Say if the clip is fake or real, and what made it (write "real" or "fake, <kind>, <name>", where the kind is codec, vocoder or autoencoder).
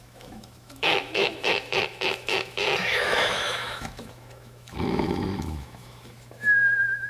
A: fake, autoencoder, DAC-VAE